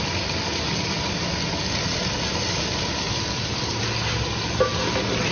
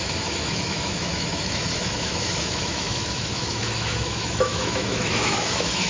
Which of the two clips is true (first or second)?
first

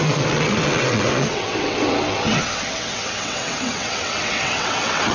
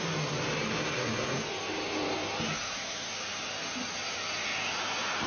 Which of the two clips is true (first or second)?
second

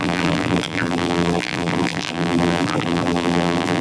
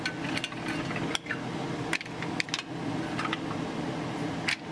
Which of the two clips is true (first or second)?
second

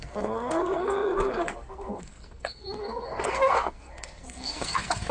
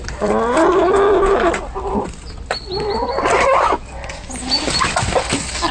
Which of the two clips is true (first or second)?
second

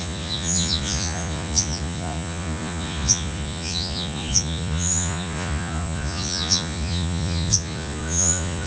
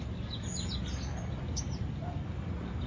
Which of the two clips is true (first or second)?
second